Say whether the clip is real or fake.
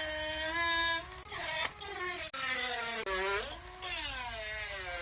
real